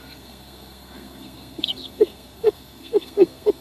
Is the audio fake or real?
fake